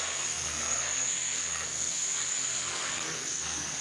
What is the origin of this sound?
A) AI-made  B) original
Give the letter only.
A